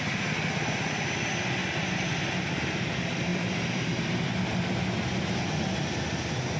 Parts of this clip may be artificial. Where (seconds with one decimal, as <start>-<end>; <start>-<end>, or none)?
none